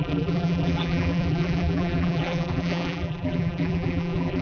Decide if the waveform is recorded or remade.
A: remade